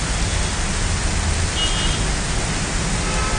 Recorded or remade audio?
recorded